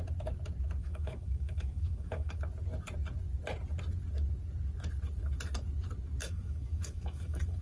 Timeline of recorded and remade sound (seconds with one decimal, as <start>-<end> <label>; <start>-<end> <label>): 0.0-0.8 recorded; 0.8-2.4 remade; 2.4-6.2 recorded; 6.2-7.6 remade